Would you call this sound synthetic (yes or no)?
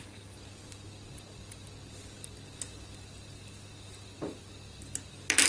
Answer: no